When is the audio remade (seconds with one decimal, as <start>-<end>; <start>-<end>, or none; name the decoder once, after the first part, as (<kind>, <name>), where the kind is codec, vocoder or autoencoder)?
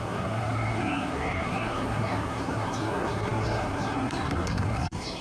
0.0-5.2 (codec, SNAC)